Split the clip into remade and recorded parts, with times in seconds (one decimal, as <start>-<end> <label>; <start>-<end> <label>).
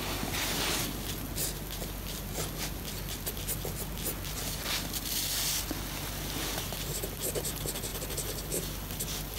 0.0-9.4 recorded